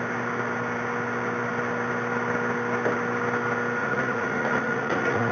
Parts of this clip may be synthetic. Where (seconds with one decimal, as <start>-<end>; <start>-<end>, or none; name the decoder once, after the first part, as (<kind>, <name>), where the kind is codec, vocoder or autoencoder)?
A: 3.8-5.3 (vocoder, Vocos)